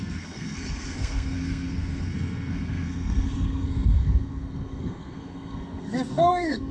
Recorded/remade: remade